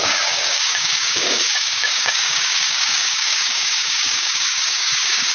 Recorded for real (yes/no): no